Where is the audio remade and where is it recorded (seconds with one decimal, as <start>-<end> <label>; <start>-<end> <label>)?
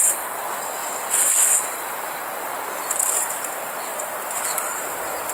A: 0.0-3.9 recorded; 3.9-4.4 remade; 4.4-5.3 recorded